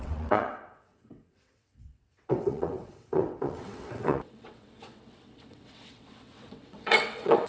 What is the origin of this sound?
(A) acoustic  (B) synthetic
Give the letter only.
B